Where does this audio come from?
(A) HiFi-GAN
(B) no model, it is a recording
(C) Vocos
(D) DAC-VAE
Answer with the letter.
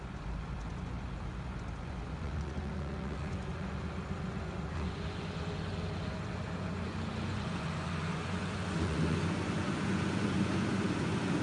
C